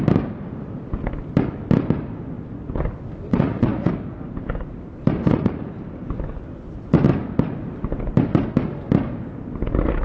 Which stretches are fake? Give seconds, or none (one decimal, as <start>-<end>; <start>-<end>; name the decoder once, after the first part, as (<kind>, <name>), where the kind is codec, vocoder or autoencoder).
3.3-3.9 (vocoder, Vocos); 5.2-5.7